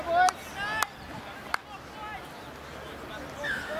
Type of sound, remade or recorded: recorded